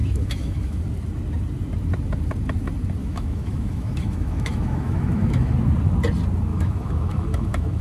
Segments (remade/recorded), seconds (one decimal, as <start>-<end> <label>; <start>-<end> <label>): 0.0-0.8 remade; 0.8-3.0 recorded; 3.0-5.5 remade; 5.5-6.5 recorded; 6.5-7.8 remade